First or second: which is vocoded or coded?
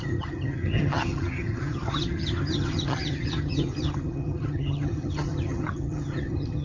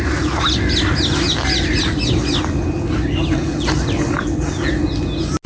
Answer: first